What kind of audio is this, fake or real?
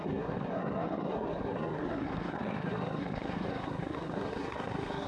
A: fake